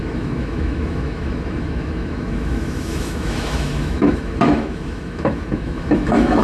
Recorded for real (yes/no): no